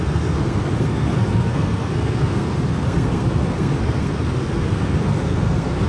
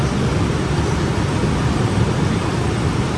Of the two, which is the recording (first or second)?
second